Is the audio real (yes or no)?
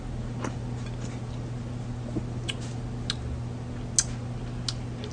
yes